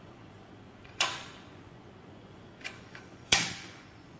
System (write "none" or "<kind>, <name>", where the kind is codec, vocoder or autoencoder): vocoder, Vocos